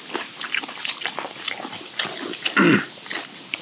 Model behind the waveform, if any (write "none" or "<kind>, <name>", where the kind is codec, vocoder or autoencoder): none